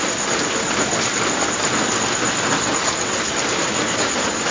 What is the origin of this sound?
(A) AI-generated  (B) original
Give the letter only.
B